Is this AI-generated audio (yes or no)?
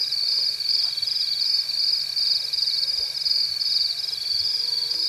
no